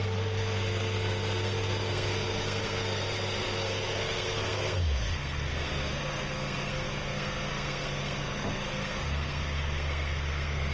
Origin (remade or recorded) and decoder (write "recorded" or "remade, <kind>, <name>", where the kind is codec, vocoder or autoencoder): remade, codec, SNAC